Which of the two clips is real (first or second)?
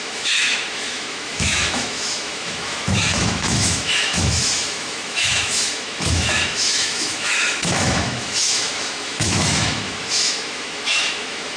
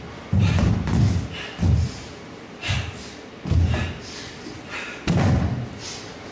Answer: second